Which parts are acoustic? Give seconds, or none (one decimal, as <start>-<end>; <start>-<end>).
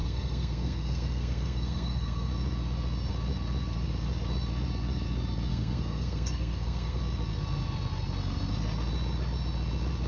2.3-5.5; 7.0-10.1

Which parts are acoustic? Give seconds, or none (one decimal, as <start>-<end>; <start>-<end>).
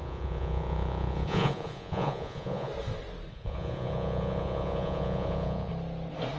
2.7-3.3; 5.7-6.4